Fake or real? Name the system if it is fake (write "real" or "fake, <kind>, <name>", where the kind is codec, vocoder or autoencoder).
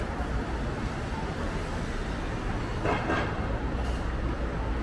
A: real